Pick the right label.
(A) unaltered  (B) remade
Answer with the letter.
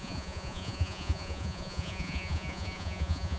B